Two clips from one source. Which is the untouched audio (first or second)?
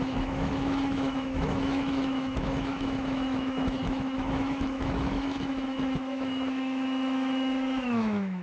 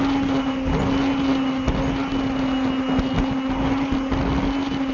second